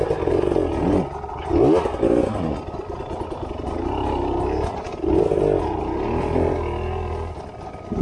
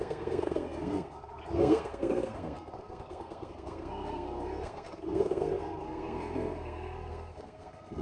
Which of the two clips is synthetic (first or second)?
second